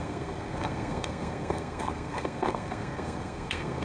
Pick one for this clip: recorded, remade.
remade